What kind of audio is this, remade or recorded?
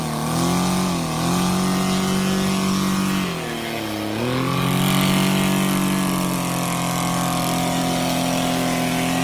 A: recorded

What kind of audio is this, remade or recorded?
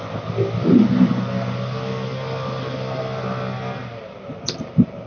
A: recorded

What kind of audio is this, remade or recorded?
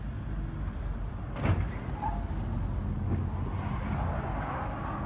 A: recorded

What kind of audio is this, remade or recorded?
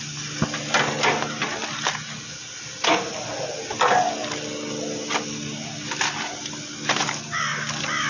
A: recorded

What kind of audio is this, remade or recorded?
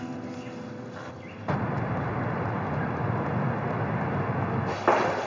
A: recorded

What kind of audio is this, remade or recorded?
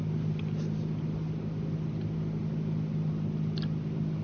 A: recorded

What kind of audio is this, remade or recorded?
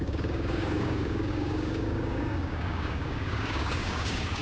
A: remade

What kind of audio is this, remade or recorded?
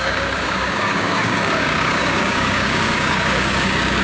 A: remade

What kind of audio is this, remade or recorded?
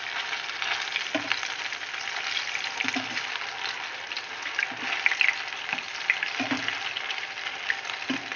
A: recorded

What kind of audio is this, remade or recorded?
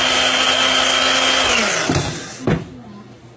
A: recorded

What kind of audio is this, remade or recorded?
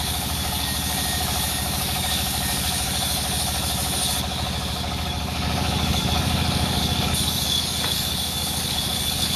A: remade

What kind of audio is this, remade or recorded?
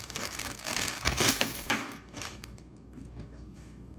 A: remade